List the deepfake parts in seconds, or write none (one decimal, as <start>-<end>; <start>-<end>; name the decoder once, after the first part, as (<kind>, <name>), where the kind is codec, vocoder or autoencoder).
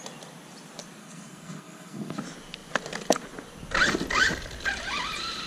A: 1.0-2.2 (codec, SNAC)